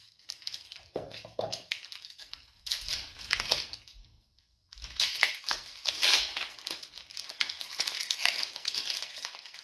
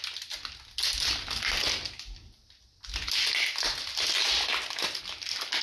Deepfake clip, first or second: first